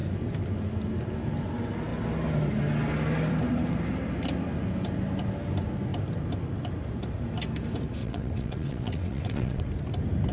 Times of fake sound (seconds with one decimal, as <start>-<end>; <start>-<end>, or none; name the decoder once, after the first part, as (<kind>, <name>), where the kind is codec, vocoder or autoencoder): 8.0-9.6 (vocoder, WaveNeXt)